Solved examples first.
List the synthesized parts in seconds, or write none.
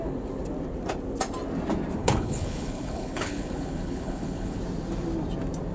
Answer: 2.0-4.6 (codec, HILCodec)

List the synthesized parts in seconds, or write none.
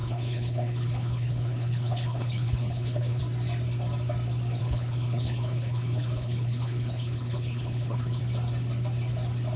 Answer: 0.0-3.2 (codec, HILCodec); 4.6-8.2